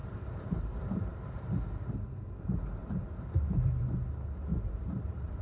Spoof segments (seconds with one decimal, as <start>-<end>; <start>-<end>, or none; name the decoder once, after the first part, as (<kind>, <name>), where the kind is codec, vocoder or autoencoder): 0.0-1.6 (vocoder, BigVGAN v2); 2.8-3.8; 4.5-5.4

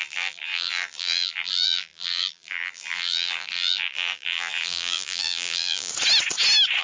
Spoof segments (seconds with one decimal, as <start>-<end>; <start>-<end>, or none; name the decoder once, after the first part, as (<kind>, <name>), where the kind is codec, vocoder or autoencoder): 0.0-5.9 (vocoder, BigVGAN v2)

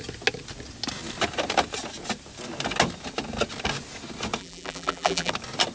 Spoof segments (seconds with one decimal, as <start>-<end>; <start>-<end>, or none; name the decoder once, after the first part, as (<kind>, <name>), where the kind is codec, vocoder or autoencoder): 4.4-5.3 (vocoder, BigVGAN v2)